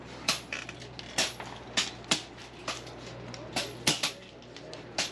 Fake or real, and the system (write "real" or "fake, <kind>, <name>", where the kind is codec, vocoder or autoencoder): real